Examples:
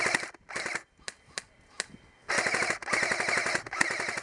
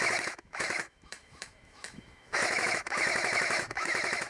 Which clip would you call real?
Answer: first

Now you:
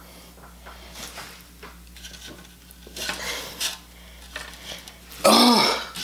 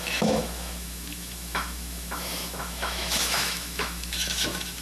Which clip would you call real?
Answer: first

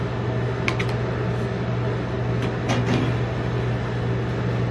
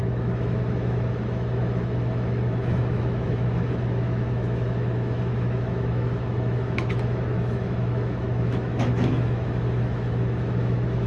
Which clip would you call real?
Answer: first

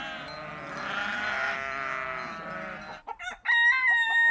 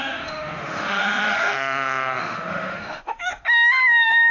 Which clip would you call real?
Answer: first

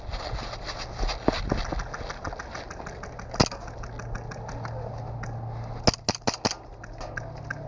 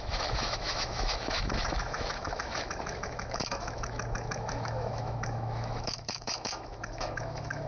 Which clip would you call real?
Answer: first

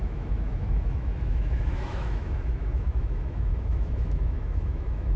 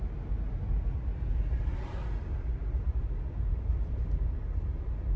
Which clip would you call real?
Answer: second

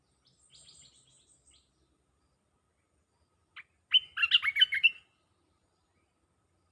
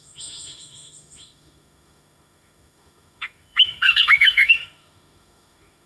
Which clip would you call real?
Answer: first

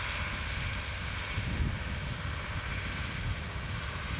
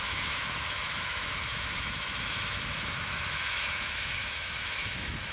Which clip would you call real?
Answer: first